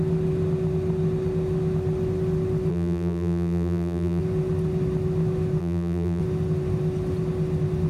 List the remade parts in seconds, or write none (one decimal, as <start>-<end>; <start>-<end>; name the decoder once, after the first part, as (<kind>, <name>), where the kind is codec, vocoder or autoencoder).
2.7-4.2 (vocoder, BigVGAN v2); 5.6-6.2